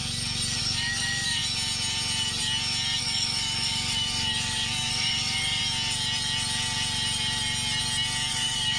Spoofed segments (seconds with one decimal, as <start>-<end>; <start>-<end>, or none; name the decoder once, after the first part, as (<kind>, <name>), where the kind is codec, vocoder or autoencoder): 0.6-1.4 (codec, DAC); 3.0-5.6; 8.3-8.8